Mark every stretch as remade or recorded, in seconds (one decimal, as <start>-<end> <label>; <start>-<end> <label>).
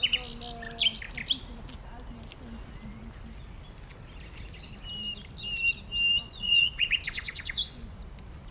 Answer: 0.0-6.2 recorded; 6.2-8.0 remade; 8.0-8.5 recorded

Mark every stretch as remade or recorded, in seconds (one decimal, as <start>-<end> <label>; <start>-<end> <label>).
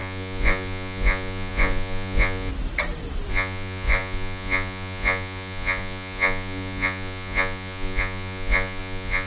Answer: 0.0-2.5 remade; 2.5-3.3 recorded; 3.3-9.3 remade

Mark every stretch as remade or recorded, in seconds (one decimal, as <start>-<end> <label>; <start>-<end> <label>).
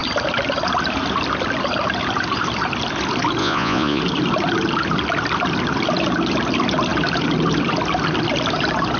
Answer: 0.0-3.4 recorded; 3.4-4.0 remade; 4.0-9.0 recorded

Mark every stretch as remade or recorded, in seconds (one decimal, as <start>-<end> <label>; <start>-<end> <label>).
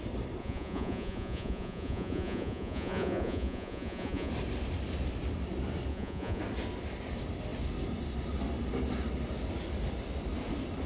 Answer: 0.0-0.4 recorded; 0.4-4.3 remade; 4.3-5.9 recorded; 5.9-6.4 remade; 6.4-10.9 recorded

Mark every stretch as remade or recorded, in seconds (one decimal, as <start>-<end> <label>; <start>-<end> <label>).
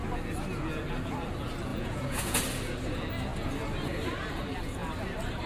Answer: 0.0-1.7 recorded; 1.7-2.4 remade; 2.4-5.5 recorded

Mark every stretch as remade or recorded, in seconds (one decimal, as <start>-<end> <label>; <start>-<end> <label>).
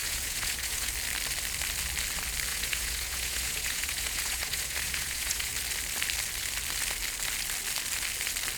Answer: 0.0-0.9 remade; 0.9-2.5 recorded; 2.5-5.5 remade; 5.5-8.6 recorded